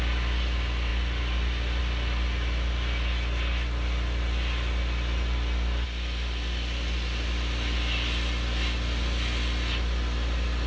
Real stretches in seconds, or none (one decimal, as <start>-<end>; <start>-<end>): 0.0-10.7